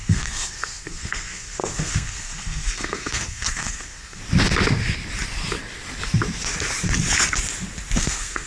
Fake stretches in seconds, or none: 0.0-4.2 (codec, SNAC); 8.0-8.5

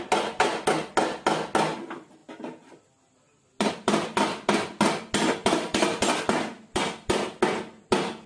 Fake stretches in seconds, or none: none

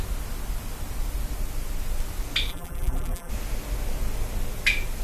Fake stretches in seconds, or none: 2.5-3.3 (vocoder, BigVGAN v2)

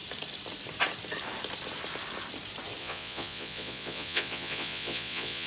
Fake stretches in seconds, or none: 2.8-5.5 (vocoder, Vocos)

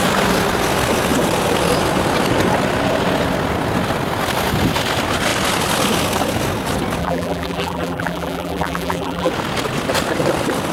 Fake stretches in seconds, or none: 7.0-9.3 (vocoder, BigVGAN v2)

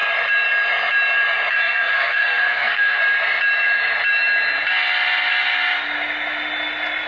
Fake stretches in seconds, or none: 1.5-3.0 (codec, SNAC)

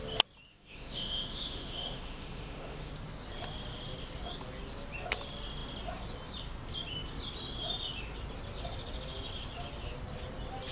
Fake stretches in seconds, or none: 0.5-2.9 (autoencoder, DAC-VAE)